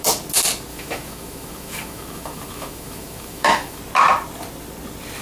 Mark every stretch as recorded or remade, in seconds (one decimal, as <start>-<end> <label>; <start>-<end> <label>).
0.0-0.7 recorded; 0.7-3.8 remade; 3.8-5.2 recorded